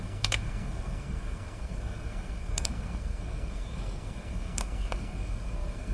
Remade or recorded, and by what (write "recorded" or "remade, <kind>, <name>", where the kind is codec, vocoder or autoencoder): remade, codec, SNAC